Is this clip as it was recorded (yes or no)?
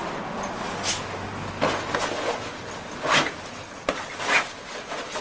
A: yes